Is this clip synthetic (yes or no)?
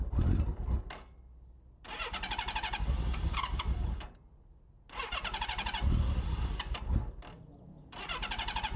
no